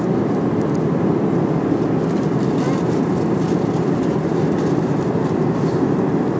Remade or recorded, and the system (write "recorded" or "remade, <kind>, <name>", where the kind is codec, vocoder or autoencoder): recorded